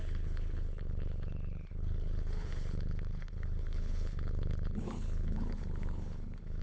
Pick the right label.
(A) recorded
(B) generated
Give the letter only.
B